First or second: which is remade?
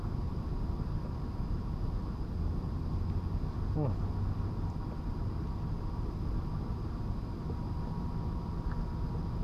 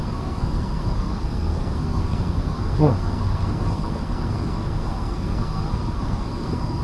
second